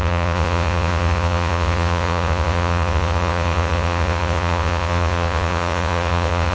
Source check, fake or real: fake